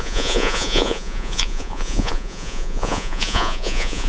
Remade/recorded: remade